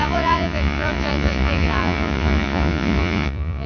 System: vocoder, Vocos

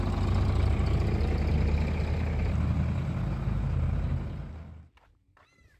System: none